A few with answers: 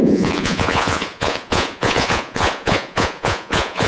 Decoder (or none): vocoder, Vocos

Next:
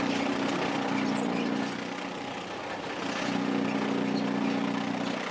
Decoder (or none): none